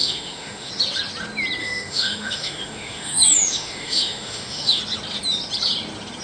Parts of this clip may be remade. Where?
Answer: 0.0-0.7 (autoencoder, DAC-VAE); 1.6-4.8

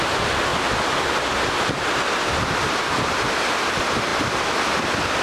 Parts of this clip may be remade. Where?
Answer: none